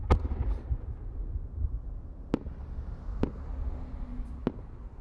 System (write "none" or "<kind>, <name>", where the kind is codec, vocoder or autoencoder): none